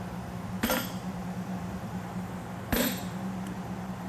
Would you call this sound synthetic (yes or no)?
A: yes